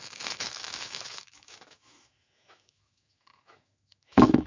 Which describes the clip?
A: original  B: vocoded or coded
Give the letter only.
B